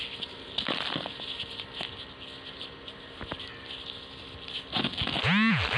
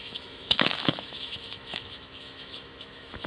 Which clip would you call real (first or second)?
first